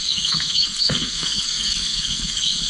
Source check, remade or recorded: remade